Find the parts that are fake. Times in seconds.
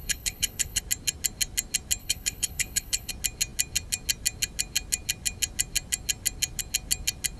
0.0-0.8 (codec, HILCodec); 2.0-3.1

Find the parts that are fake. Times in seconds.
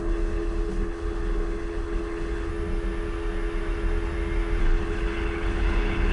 0.0-2.5 (codec, HILCodec); 4.6-6.1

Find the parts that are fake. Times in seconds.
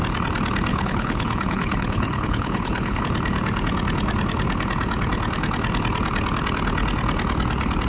0.7-3.0 (codec, HILCodec)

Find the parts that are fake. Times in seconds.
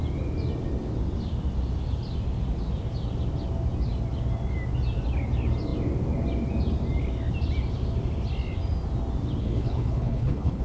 9.4-10.6 (codec, HILCodec)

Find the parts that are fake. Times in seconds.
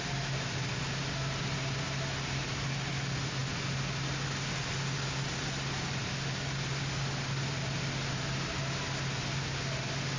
none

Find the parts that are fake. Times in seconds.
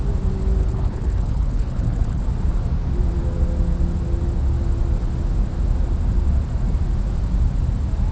0.6-2.2 (codec, HILCodec)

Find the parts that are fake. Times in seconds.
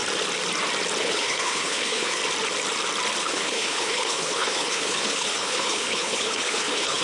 1.0-2.2 (codec, HILCodec); 3.2-7.0